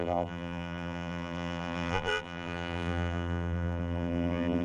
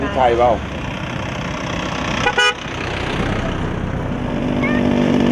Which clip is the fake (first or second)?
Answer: first